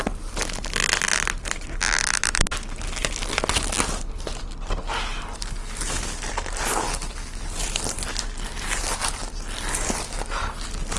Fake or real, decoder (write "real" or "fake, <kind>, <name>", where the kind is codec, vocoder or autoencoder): real